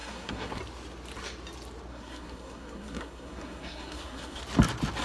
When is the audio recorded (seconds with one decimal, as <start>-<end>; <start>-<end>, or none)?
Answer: 0.6-1.9; 4.4-5.0